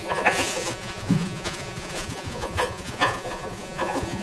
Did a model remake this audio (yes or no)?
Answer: yes